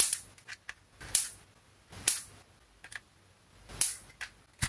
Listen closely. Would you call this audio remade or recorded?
recorded